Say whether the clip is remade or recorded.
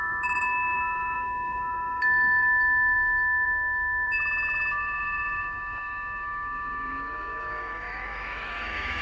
remade